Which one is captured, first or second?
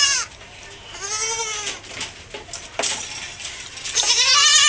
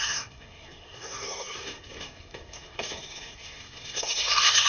first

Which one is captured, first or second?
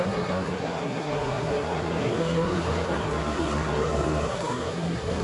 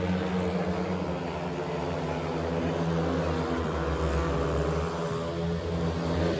second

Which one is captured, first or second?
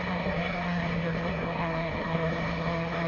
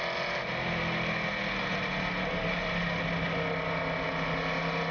second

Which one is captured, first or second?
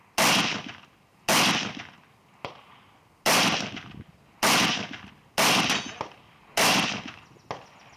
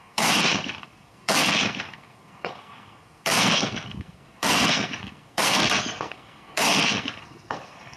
first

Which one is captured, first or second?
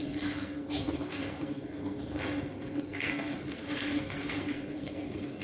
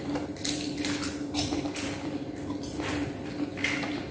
second